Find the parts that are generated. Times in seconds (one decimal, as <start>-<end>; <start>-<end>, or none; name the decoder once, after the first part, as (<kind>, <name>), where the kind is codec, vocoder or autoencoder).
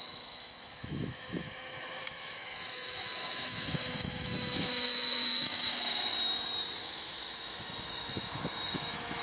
0.0-6.1 (autoencoder, DAC-VAE); 6.8-9.2